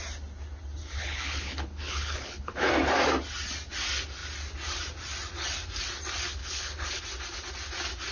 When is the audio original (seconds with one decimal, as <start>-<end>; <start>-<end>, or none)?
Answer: 0.0-0.8; 2.7-6.4; 7.0-8.1